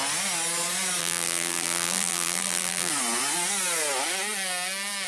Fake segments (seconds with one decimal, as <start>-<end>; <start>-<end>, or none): 1.0-2.9